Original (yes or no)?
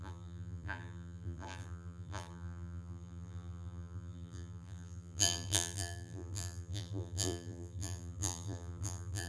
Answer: no